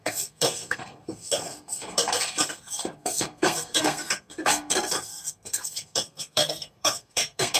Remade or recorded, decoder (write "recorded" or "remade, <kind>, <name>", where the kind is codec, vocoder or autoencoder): remade, codec, SNAC